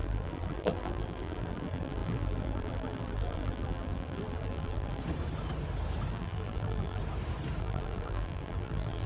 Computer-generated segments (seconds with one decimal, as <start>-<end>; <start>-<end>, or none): 0.0-5.0; 6.1-7.0; 7.6-9.1